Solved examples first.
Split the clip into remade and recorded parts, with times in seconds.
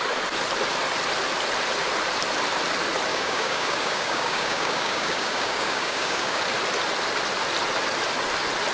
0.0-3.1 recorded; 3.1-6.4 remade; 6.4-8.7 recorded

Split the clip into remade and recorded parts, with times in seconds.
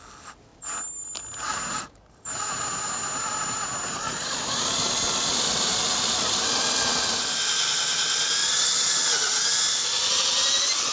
0.0-8.4 recorded; 8.4-9.1 remade; 9.1-10.9 recorded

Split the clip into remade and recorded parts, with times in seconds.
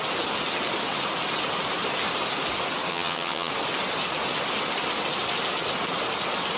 0.0-2.9 recorded; 2.9-3.5 remade; 3.5-6.6 recorded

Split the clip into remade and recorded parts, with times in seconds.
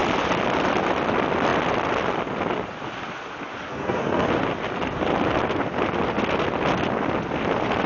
0.0-3.7 recorded; 3.7-4.3 remade; 4.3-7.9 recorded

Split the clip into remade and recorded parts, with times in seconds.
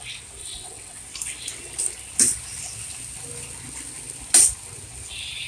0.0-0.4 recorded; 0.4-1.0 remade; 1.0-5.5 recorded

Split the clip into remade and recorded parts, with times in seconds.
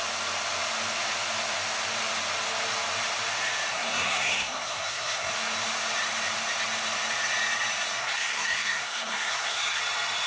0.0-3.7 recorded; 3.7-5.3 remade; 5.3-8.0 recorded; 8.0-9.8 remade; 9.8-10.3 recorded